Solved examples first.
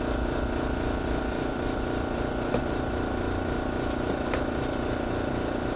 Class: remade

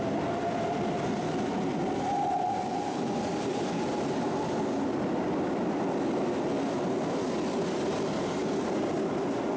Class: recorded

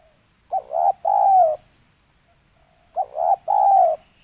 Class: recorded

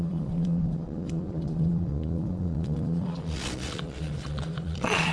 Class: remade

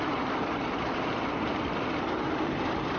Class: recorded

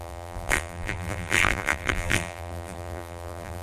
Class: remade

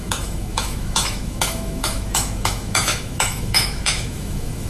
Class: remade